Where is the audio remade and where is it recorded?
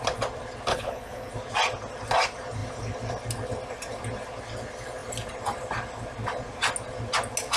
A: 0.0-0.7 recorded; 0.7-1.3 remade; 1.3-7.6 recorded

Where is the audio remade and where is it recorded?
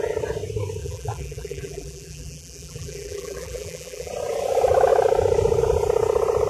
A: 0.0-0.8 recorded; 0.8-4.1 remade; 4.1-6.5 recorded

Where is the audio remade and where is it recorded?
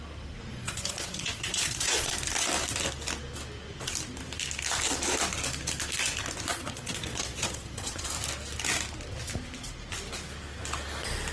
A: 0.0-0.5 recorded; 0.5-2.1 remade; 2.1-6.5 recorded; 6.5-8.1 remade; 8.1-11.3 recorded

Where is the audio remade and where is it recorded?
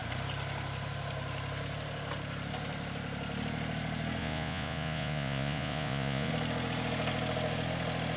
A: 0.0-4.2 recorded; 4.2-6.3 remade; 6.3-8.2 recorded